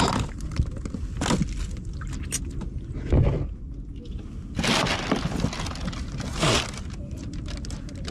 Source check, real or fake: real